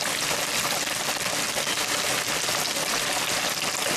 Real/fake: real